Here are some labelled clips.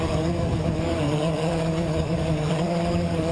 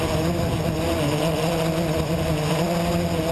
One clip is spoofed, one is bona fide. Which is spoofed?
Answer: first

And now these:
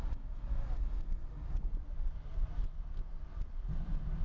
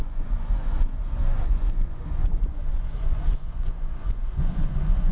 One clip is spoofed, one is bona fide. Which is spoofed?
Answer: second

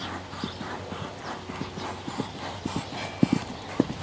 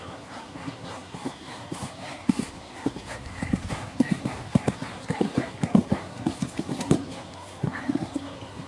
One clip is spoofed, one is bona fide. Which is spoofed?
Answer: second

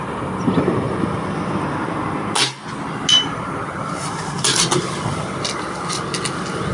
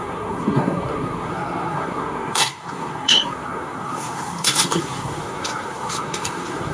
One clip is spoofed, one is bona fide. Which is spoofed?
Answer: second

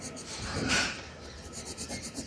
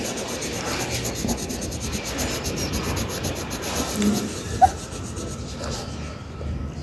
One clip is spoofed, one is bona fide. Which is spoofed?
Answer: first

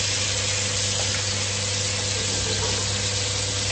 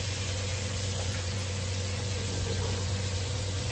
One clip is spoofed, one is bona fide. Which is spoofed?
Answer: second